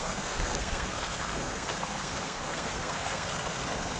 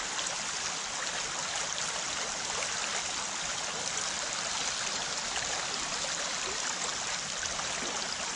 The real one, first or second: second